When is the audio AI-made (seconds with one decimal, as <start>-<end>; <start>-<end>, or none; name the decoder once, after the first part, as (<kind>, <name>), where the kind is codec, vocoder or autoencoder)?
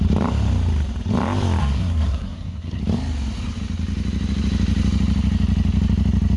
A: 1.6-2.8 (codec, SNAC)